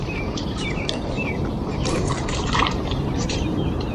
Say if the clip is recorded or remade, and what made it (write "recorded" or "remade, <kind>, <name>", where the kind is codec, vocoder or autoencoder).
remade, vocoder, BigVGAN v2